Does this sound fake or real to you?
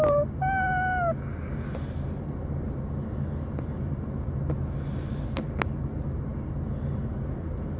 real